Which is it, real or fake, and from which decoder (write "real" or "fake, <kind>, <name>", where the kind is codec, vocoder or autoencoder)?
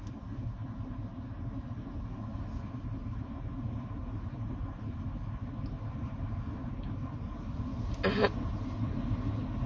real